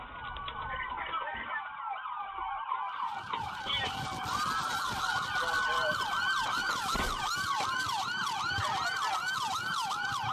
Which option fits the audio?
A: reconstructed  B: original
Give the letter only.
B